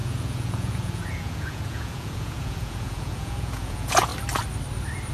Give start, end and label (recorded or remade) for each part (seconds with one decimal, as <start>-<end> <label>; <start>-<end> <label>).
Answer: 0.0-4.1 remade; 4.1-5.1 recorded